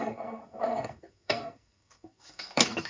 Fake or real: fake